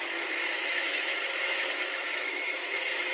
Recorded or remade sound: remade